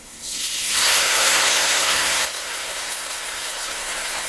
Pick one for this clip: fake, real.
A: fake